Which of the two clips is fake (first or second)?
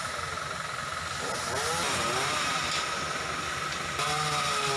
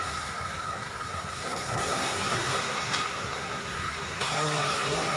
second